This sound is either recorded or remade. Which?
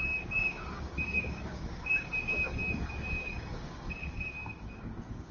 remade